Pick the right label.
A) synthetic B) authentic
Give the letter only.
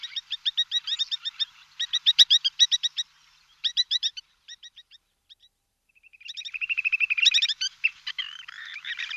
A